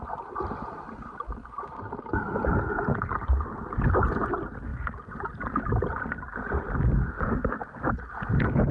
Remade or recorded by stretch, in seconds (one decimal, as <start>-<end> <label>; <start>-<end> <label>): 0.0-8.7 recorded